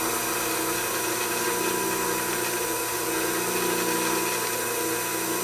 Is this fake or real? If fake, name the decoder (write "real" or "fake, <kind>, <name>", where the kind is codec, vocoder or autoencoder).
real